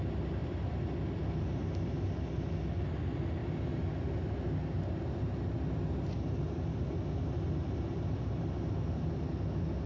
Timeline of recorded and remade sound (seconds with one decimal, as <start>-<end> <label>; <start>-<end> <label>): 0.0-9.9 recorded